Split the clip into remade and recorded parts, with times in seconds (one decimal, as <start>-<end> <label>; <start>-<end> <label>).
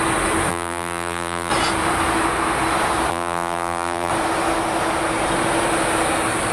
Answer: 0.0-0.5 recorded; 0.5-1.5 remade; 1.5-3.1 recorded; 3.1-4.1 remade; 4.1-6.5 recorded